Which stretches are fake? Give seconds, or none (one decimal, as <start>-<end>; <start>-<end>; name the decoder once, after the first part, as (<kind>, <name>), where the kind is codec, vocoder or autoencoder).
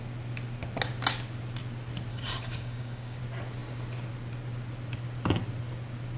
2.1-3.2 (codec, DAC)